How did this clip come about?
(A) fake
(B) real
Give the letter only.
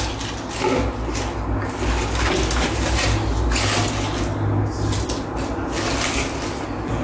B